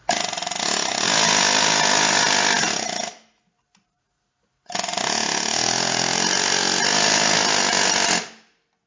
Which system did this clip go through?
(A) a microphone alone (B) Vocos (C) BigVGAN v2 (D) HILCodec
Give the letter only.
A